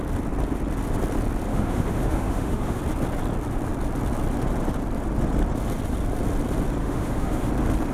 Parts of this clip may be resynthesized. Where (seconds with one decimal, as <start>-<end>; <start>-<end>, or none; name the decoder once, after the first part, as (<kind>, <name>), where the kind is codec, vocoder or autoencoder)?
1.5-2.8 (autoencoder, DAC-VAE); 6.8-7.5